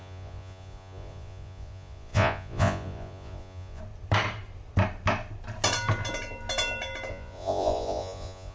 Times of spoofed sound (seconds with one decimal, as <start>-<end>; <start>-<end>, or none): 0.0-3.8; 7.1-8.5